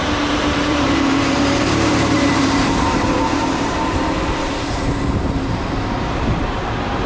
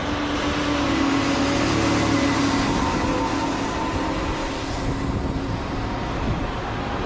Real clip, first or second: second